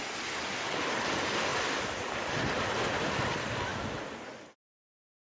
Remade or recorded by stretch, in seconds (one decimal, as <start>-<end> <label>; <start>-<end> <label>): 0.0-5.3 recorded